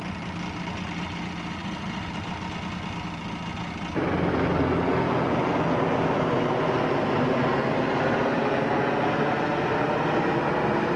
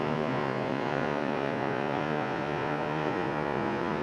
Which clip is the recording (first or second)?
first